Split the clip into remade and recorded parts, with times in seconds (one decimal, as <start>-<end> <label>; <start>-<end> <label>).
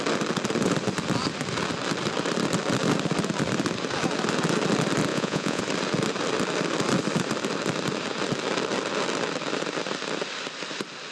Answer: 0.0-5.1 recorded; 5.1-5.6 remade; 5.6-11.1 recorded